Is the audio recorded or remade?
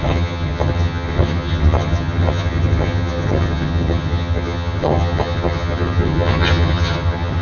remade